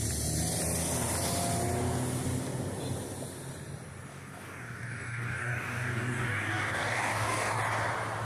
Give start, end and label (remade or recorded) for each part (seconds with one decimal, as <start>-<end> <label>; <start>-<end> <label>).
0.0-4.1 recorded; 4.1-7.6 remade; 7.6-8.2 recorded